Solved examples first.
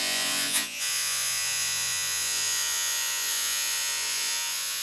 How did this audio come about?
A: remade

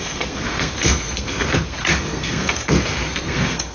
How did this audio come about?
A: remade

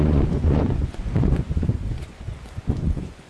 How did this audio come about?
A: remade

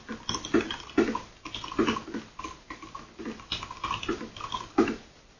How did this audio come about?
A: recorded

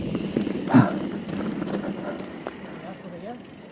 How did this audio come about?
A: recorded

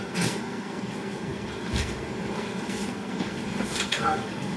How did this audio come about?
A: remade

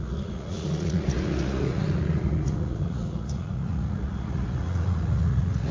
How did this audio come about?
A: remade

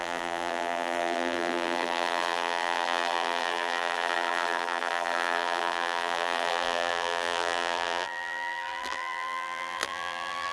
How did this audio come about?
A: remade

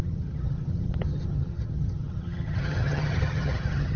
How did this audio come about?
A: remade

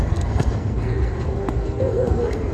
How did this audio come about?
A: remade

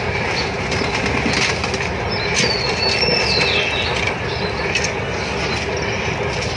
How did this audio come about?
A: recorded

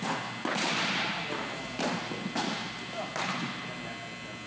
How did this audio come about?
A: recorded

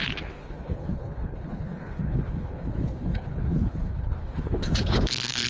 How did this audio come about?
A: remade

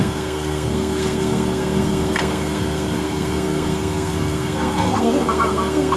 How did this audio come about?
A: remade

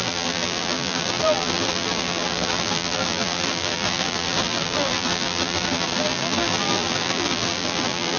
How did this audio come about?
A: remade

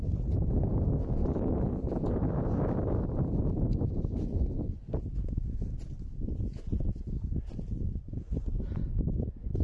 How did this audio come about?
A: recorded